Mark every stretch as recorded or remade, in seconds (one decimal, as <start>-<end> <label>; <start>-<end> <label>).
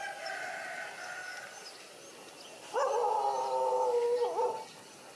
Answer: 0.0-5.2 recorded